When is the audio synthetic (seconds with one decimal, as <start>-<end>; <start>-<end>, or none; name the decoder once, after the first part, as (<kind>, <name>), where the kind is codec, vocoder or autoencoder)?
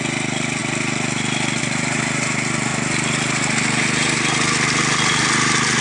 none